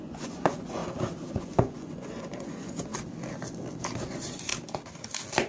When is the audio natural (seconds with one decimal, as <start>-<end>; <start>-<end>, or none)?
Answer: 0.8-1.3; 2.9-4.1; 4.5-5.5